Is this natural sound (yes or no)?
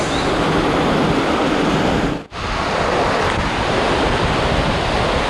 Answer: yes